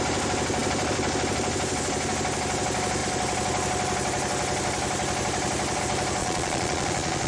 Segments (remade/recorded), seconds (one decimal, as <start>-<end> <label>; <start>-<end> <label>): 0.0-6.2 recorded; 6.2-7.3 remade